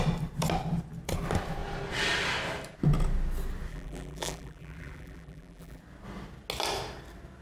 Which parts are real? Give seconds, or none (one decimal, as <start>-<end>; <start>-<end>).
0.0-3.7; 5.8-7.4

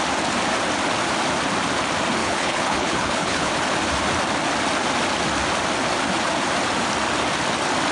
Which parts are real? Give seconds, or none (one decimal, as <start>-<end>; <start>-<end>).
0.0-2.2; 3.5-7.9

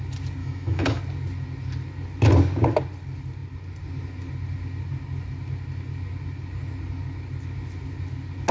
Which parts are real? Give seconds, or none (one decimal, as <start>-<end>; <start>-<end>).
0.0-0.4; 1.0-8.5

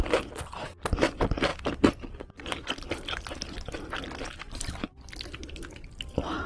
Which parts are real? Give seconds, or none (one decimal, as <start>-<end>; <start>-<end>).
0.0-6.5

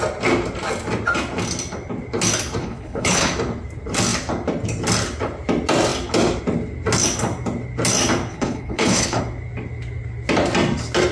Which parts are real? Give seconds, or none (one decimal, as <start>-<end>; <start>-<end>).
0.0-2.6; 3.3-8.3; 9.2-11.1

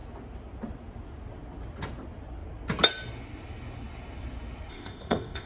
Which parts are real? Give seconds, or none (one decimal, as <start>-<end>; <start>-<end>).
0.0-4.7

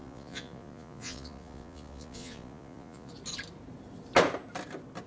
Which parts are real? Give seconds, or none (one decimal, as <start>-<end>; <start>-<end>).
3.1-5.1

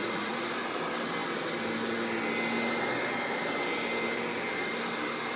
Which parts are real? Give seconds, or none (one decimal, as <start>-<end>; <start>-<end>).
0.5-5.4